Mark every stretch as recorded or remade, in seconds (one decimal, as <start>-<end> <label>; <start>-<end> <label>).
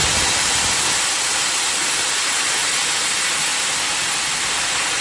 0.0-5.0 recorded